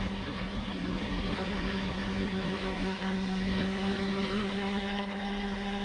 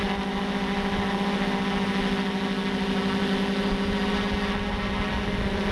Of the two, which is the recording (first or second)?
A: second